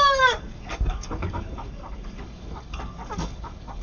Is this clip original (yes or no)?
no